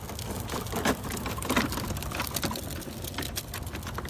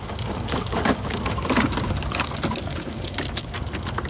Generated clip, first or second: second